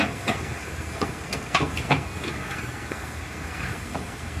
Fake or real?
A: fake